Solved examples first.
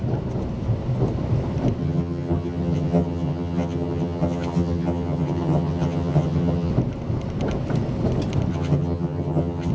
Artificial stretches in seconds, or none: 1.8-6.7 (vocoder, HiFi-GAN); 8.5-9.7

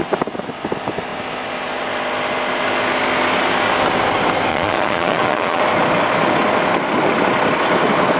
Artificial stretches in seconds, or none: 4.5-5.6 (vocoder, Vocos)

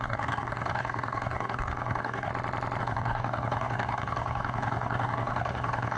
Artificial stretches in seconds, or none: 0.0-2.3 (codec, DAC); 2.8-6.0

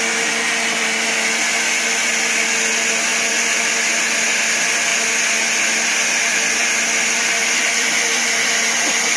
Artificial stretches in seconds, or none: 3.1-3.7 (vocoder, BigVGAN v2); 7.4-8.2

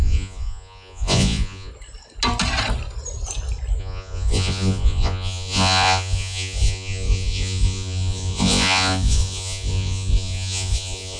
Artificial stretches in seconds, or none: 0.0-1.7 (vocoder, Vocos); 3.8-11.2